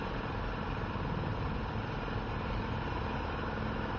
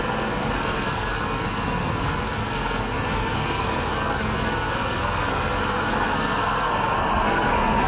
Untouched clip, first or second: first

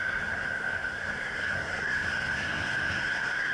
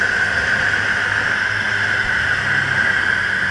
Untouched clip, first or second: second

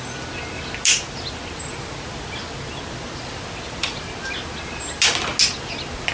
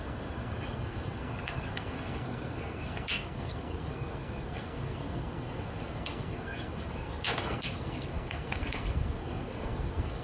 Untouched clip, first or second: first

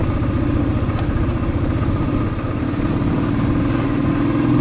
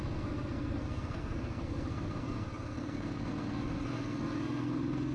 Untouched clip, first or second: first